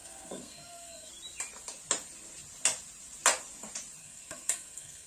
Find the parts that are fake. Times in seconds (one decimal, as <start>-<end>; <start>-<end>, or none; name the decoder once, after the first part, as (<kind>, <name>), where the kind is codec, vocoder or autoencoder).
0.0-1.1 (codec, SNAC); 4.0-5.1